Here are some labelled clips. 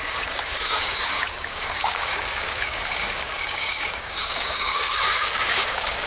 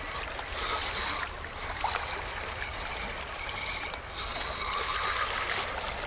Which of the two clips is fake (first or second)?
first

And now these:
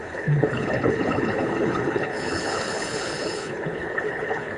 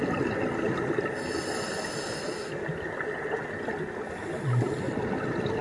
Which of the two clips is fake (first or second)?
first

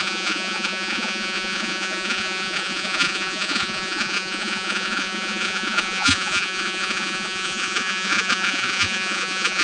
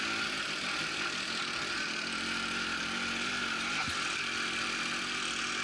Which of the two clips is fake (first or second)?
first